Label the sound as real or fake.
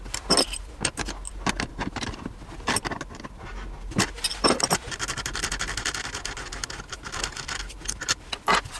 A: real